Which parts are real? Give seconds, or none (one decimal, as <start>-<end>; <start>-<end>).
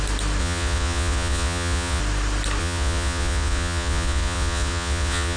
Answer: 0.0-0.4; 2.0-2.6